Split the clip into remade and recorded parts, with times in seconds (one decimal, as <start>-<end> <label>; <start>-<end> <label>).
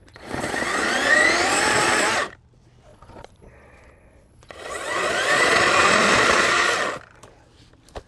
0.0-2.2 remade; 2.2-2.9 recorded; 2.9-6.7 remade; 6.7-8.1 recorded